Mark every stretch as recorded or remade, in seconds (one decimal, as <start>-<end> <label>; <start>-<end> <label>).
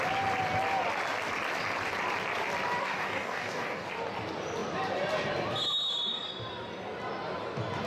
0.0-2.8 recorded; 2.8-3.9 remade; 3.9-7.9 recorded